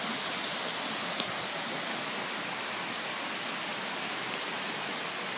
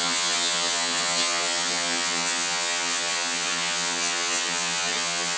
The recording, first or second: first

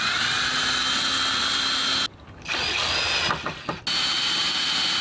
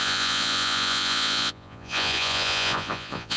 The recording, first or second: first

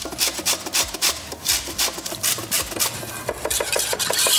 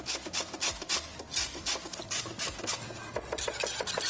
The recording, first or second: second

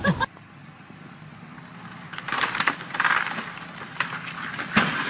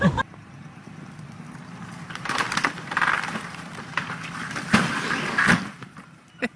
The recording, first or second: first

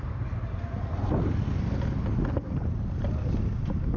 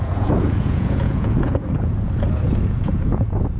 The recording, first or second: first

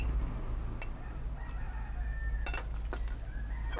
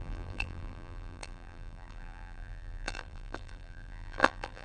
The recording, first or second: first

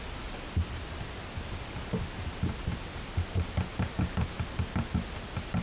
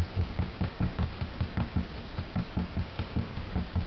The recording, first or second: first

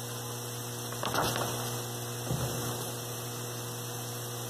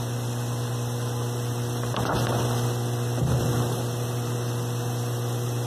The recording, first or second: first